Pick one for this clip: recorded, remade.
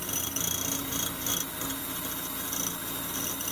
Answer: recorded